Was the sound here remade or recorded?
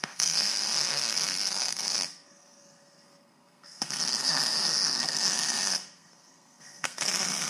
remade